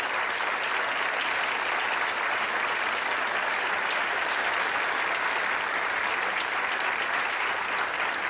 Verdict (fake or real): real